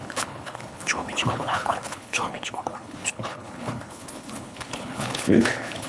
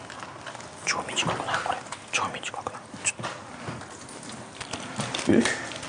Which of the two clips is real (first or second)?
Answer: second